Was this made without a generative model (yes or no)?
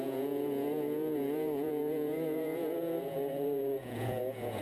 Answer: no